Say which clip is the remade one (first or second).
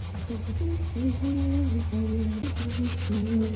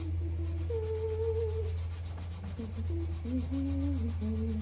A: first